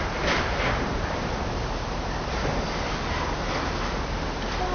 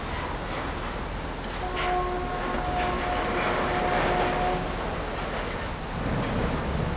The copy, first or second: first